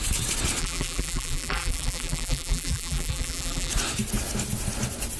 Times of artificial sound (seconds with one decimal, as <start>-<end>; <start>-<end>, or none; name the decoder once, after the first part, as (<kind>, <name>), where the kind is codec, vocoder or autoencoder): 0.6-3.7 (vocoder, BigVGAN v2)